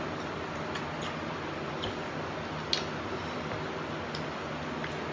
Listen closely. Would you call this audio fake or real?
real